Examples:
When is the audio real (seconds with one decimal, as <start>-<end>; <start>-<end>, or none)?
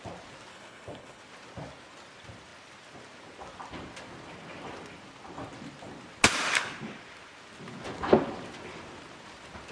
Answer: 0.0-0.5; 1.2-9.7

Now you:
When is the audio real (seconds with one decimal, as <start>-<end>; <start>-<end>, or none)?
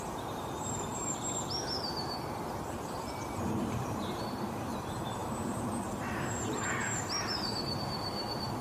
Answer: 0.0-8.6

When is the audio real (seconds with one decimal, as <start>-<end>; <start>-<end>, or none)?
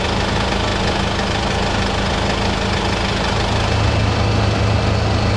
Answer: 0.0-5.4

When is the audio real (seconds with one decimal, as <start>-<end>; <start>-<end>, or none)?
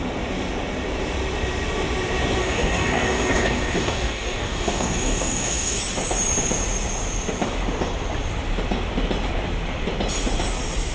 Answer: 0.0-2.4; 5.8-10.9